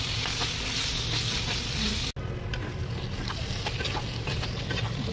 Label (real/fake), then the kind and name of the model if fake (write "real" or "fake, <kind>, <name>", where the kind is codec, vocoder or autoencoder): real